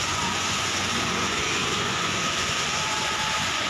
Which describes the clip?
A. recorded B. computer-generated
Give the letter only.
B